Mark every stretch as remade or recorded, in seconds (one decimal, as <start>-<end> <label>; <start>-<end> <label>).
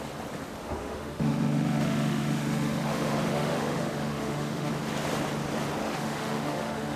0.0-0.6 recorded; 0.6-4.7 remade; 4.7-5.8 recorded; 5.8-7.0 remade